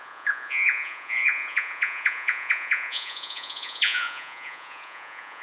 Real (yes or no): no